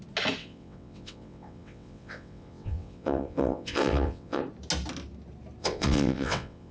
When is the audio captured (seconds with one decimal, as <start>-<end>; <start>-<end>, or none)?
0.0-0.4; 4.4-5.6